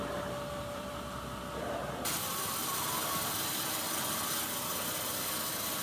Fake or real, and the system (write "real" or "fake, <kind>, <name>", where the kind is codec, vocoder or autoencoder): fake, vocoder, BigVGAN v2